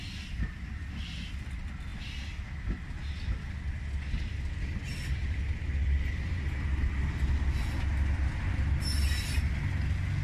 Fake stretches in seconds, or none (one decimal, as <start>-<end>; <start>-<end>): none